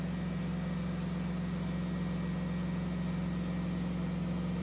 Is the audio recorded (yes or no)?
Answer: yes